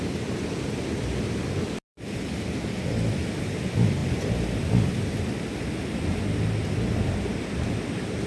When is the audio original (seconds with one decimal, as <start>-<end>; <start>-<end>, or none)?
0.0-8.3